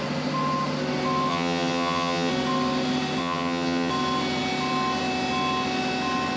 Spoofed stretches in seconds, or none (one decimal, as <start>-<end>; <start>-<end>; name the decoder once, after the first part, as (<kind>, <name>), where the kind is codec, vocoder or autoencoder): 1.3-2.3 (vocoder, HiFi-GAN); 3.2-3.9